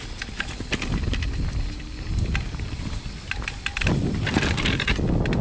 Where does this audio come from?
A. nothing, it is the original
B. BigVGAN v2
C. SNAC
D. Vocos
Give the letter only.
A